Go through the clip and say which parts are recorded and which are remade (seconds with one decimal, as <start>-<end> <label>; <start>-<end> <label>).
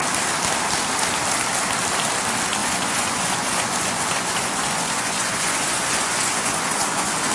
0.0-2.6 recorded; 2.6-7.3 remade